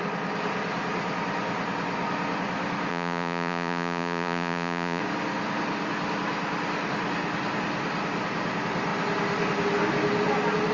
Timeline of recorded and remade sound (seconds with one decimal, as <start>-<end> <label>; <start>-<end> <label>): 0.0-2.9 recorded; 2.9-5.0 remade; 5.0-10.7 recorded